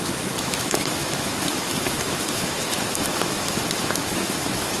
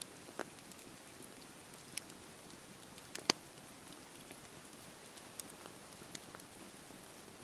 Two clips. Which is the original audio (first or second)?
second